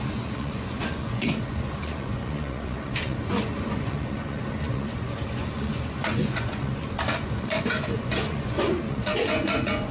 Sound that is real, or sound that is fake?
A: fake